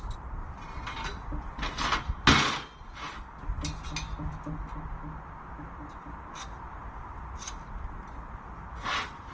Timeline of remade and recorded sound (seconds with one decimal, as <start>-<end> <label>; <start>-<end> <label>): 0.0-9.3 recorded